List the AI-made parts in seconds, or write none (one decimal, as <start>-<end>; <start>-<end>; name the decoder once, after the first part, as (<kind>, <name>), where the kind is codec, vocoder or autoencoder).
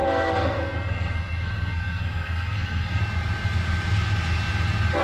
0.0-3.0 (codec, SNAC)